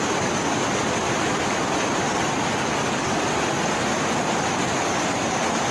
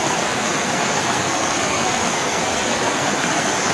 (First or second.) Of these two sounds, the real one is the first